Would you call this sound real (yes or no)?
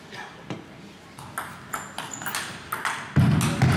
yes